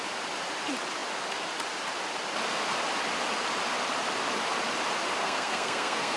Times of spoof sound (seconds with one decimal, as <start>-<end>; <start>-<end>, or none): 5.2-6.2